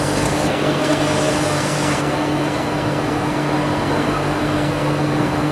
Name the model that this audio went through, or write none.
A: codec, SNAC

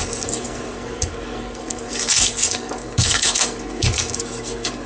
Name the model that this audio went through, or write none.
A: codec, SNAC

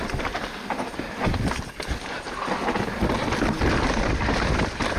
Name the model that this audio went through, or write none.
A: none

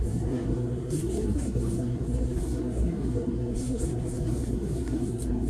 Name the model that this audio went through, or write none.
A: codec, SNAC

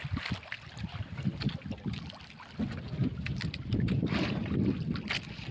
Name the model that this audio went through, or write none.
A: none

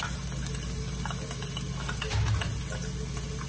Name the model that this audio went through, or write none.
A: none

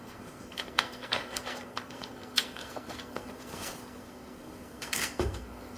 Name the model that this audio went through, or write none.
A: codec, SNAC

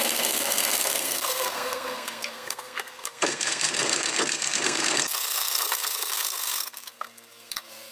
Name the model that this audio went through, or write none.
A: codec, SNAC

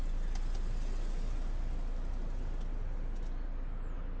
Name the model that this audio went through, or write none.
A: none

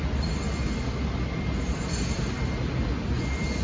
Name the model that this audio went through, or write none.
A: none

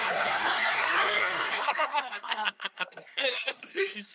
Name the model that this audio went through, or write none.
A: codec, SNAC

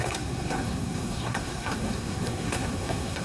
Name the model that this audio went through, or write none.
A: codec, SNAC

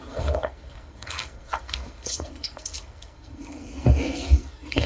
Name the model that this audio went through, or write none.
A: codec, SNAC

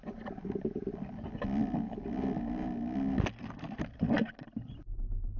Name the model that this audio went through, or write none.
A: none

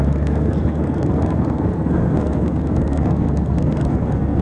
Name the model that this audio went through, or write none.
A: codec, SNAC